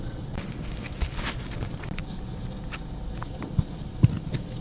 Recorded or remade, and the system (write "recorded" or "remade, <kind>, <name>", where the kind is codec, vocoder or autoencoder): recorded